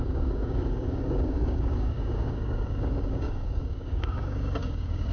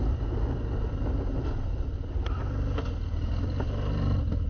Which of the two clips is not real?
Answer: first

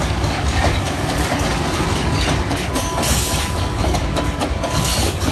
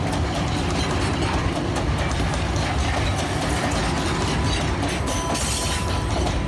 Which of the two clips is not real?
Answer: first